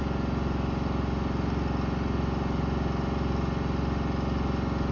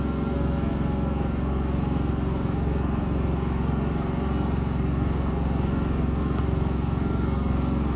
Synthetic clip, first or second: second